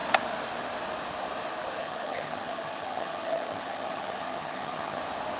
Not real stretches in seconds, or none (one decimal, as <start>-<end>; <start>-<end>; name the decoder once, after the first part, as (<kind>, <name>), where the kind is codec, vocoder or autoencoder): 1.8-5.0 (vocoder, HiFi-GAN)